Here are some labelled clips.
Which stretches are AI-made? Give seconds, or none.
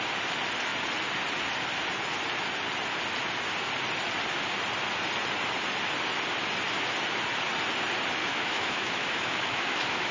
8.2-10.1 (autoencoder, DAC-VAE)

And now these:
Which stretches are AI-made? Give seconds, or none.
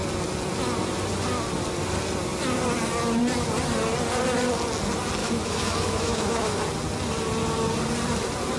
5.2-6.6 (autoencoder, DAC-VAE)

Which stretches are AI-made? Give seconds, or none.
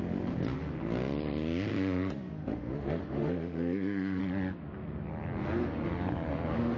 1.7-4.2 (autoencoder, DAC-VAE)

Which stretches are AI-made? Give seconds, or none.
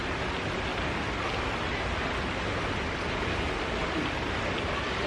none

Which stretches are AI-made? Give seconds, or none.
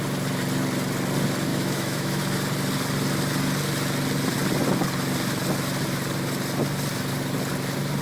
1.5-2.2 (autoencoder, DAC-VAE)